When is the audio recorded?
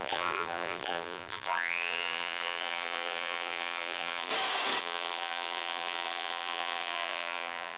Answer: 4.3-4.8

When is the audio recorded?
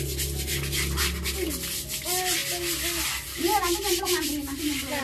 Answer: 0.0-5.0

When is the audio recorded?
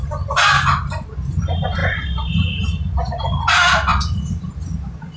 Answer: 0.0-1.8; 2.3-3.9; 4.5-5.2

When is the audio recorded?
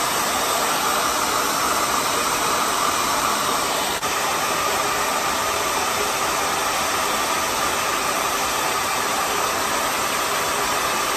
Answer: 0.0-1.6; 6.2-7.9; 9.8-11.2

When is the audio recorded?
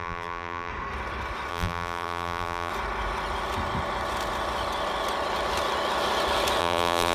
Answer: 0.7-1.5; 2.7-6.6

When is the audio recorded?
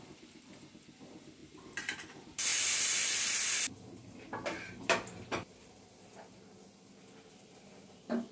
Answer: 0.0-5.3; 6.1-8.3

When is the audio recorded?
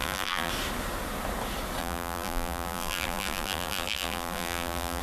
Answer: 0.5-1.8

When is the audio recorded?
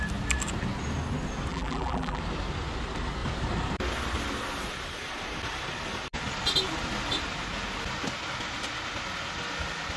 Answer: 0.0-1.5; 2.2-10.0